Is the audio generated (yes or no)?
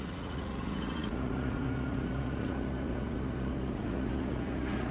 yes